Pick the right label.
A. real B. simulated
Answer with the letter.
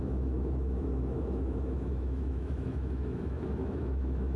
B